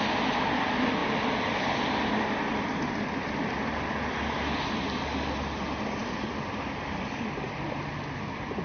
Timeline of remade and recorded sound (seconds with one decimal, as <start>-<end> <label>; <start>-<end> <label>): 0.0-8.6 recorded